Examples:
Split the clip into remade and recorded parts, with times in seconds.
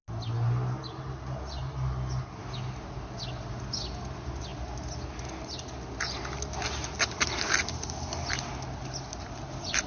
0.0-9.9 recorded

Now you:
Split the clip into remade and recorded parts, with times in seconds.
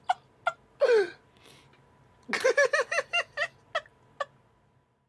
0.0-5.1 recorded